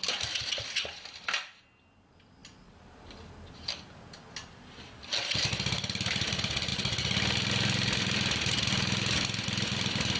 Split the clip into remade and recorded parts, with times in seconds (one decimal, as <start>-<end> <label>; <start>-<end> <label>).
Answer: 0.0-10.2 recorded